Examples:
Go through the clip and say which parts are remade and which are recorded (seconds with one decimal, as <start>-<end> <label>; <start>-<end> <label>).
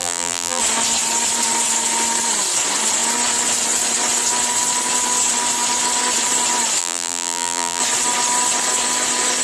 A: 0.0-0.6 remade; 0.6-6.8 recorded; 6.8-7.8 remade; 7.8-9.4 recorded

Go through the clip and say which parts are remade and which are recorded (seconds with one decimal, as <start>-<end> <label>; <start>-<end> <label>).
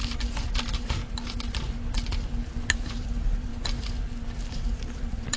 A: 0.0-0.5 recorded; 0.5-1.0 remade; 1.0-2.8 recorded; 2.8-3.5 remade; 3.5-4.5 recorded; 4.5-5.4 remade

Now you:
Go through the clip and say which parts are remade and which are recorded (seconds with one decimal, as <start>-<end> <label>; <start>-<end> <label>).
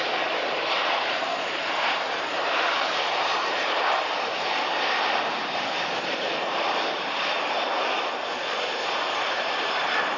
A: 0.0-7.7 remade; 7.7-9.3 recorded; 9.3-10.2 remade